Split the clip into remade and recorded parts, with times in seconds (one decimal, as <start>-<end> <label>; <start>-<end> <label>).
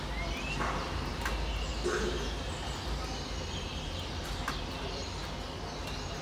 0.0-6.2 recorded